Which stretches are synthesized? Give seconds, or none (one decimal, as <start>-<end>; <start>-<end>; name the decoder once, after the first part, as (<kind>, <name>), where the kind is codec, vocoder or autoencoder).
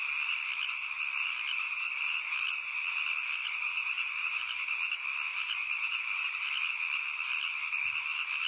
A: 1.5-2.0 (vocoder, BigVGAN v2); 3.4-4.6; 5.3-6.5